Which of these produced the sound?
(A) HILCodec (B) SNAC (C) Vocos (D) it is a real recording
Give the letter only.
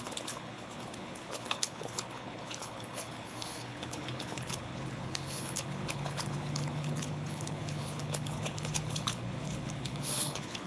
A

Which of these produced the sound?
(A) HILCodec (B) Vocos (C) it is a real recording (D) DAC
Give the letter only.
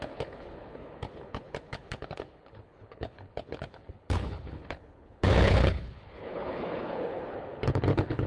A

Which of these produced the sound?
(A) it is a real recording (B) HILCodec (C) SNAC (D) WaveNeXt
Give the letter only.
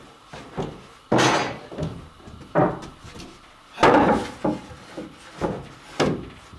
A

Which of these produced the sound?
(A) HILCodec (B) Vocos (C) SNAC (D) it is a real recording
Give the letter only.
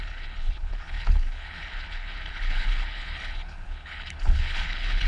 A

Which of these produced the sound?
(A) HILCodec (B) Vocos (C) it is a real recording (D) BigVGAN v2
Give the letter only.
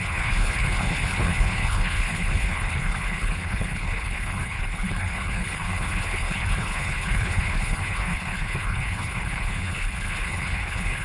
A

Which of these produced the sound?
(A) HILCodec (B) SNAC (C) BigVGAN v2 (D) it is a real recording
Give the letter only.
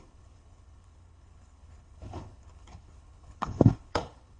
A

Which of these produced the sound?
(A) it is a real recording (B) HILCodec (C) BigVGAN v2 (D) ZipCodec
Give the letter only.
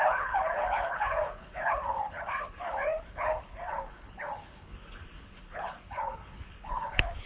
B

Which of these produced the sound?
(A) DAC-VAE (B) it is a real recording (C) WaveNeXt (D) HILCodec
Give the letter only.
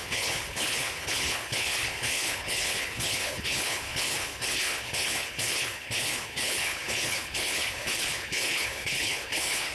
D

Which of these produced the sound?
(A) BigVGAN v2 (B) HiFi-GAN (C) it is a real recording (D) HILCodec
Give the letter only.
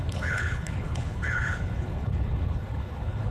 D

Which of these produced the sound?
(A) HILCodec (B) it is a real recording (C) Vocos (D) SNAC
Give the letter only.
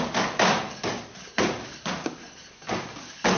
B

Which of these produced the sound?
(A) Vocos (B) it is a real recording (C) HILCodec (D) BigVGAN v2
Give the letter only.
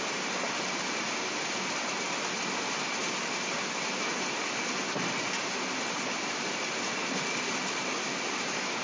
B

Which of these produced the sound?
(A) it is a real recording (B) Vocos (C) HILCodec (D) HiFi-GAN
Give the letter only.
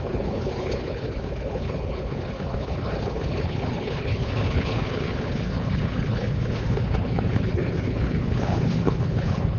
C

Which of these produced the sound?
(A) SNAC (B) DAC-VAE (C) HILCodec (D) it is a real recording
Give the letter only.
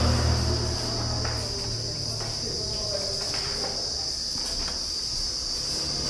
D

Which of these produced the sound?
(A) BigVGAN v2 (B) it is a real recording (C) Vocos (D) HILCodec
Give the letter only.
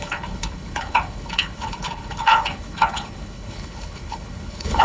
D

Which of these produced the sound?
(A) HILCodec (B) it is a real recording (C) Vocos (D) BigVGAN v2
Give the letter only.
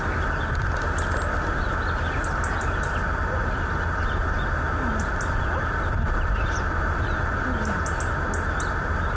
B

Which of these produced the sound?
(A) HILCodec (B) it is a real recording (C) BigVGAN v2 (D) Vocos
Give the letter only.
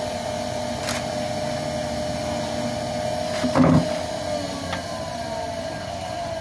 B